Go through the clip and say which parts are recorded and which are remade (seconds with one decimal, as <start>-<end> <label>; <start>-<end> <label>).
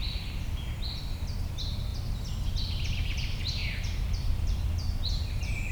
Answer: 0.0-3.6 remade; 3.6-4.1 recorded; 4.1-5.7 remade